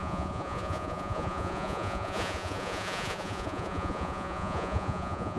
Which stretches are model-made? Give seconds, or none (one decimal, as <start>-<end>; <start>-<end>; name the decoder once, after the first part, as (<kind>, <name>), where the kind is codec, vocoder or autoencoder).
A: 0.0-5.4 (vocoder, Vocos)